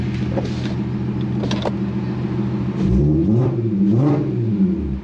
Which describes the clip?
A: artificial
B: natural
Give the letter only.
B